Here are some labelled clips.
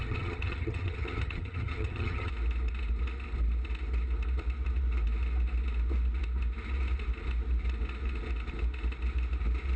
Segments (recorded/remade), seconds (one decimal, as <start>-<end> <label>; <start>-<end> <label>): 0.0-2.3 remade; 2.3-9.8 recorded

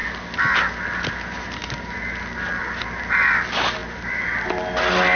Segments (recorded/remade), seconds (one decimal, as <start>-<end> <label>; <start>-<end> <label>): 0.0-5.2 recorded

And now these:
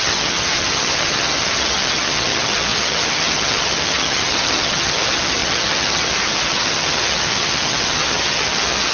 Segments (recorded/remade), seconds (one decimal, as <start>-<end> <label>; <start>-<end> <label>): 0.0-8.9 remade